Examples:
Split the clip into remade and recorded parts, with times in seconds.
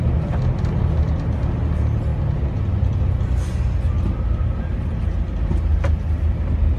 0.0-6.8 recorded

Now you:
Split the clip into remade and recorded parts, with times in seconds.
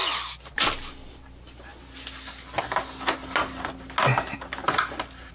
0.0-5.3 recorded